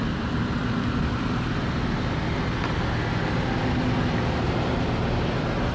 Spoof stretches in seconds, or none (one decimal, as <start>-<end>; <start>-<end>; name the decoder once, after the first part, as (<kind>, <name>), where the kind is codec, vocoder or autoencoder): none